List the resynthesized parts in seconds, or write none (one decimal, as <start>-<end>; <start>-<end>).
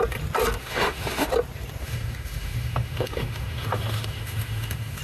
0.6-1.3; 1.8-5.0